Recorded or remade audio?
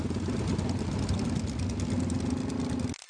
recorded